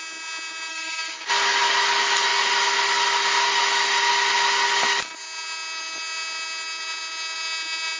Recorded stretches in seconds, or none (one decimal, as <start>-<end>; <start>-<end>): 0.0-0.7; 1.3-8.0